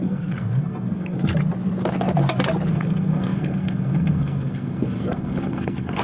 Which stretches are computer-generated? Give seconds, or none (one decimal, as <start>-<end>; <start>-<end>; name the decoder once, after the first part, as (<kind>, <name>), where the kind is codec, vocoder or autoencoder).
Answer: 0.0-1.3 (codec, SNAC); 2.7-6.0